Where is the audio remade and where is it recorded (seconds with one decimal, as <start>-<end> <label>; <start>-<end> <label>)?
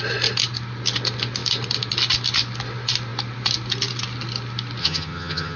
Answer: 0.0-4.8 recorded; 4.8-5.6 remade